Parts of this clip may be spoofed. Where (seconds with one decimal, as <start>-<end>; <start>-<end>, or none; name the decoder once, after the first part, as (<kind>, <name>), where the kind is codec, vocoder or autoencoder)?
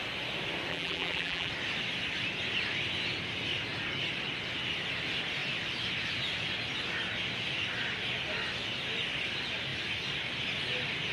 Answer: 0.7-1.5 (vocoder, BigVGAN v2)